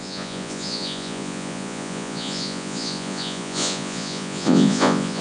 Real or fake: fake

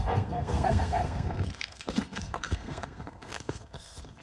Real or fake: fake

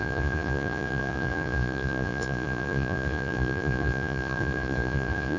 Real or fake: fake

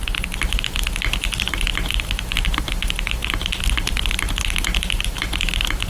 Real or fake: real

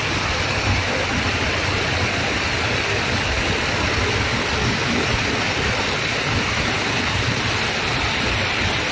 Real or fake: real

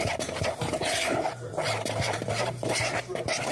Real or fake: fake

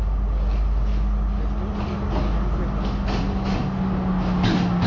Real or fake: real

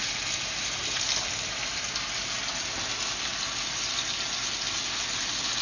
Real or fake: real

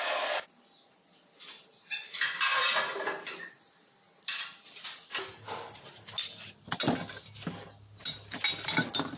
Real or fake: real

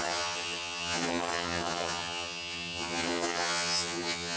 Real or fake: fake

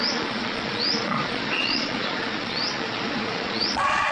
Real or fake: fake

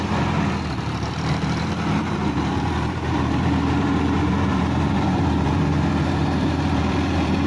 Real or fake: fake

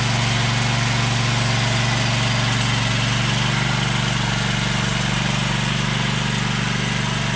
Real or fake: real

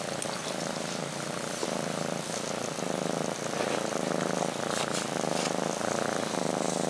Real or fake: real